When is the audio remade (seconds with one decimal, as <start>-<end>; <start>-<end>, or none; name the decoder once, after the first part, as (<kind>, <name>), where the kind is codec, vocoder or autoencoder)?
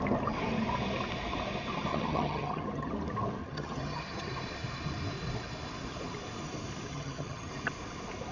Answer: 1.9-2.9 (vocoder, HiFi-GAN); 3.4-4.3; 6.9-7.5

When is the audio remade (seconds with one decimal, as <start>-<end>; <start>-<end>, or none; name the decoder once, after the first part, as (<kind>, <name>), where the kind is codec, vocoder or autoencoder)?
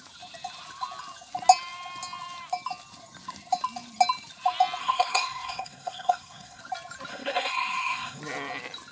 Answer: 4.8-6.6 (codec, SNAC); 7.1-8.2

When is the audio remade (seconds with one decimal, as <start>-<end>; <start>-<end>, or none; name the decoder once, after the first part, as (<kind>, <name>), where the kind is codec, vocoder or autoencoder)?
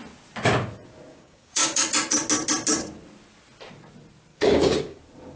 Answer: 1.1-1.8 (codec, DAC); 4.3-5.0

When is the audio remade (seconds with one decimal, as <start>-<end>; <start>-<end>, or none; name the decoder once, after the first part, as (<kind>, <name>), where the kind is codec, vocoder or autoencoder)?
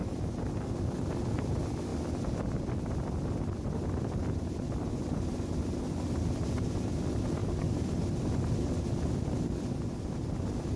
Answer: 0.0-0.7 (vocoder, BigVGAN v2)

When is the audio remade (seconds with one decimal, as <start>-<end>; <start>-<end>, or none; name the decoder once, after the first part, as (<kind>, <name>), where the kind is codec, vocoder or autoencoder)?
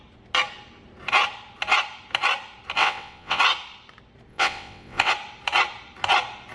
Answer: 2.8-3.4 (vocoder, WaveNeXt); 4.3-5.1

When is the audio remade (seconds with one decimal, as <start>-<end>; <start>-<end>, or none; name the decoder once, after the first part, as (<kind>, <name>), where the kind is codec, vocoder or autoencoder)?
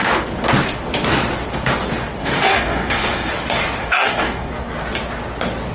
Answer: 2.2-3.3 (codec, DAC); 3.8-4.5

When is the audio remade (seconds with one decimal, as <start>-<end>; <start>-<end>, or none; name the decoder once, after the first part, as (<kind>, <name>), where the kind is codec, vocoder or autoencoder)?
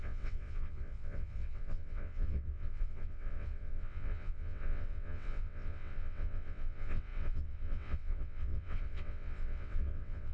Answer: 0.0-10.3 (vocoder, WaveNeXt)